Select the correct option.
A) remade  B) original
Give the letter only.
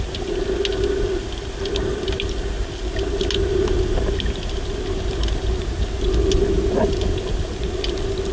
B